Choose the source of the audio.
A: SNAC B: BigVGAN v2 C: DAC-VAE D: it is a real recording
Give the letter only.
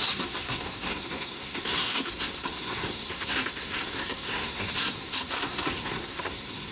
A